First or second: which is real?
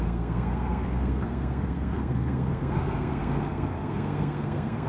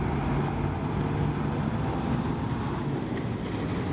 second